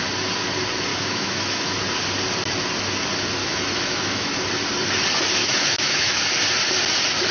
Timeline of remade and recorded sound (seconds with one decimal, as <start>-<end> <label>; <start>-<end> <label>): 0.0-0.9 recorded; 0.9-1.7 remade; 1.7-3.4 recorded; 3.4-4.3 remade; 4.3-5.4 recorded; 5.4-6.2 remade; 6.2-7.3 recorded